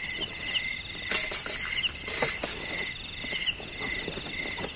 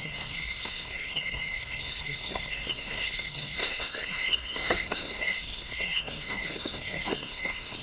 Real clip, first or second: first